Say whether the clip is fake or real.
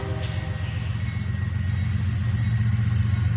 real